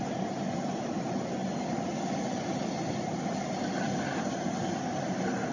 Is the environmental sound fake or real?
real